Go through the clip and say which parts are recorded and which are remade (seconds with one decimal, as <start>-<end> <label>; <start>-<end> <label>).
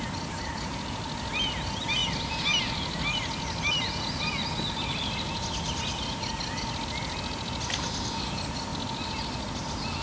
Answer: 0.0-10.0 recorded